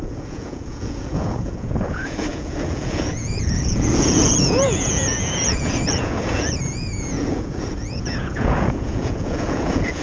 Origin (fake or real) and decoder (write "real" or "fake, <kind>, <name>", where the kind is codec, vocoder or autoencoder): fake, vocoder, Vocos